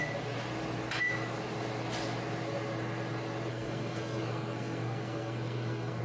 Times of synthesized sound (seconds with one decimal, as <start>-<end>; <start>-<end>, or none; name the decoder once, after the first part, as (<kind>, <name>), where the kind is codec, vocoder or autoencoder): 3.5-6.0 (codec, SNAC)